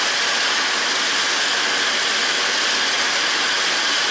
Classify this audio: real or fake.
real